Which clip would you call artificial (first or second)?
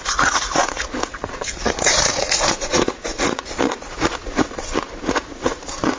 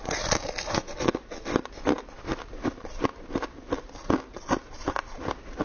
first